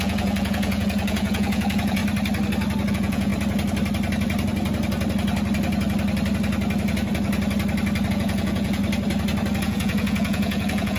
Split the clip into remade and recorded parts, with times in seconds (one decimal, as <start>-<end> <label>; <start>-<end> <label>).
0.0-2.0 remade; 2.0-2.9 recorded; 2.9-3.3 remade; 3.3-8.1 recorded; 8.1-8.8 remade; 8.8-9.6 recorded; 9.6-11.0 remade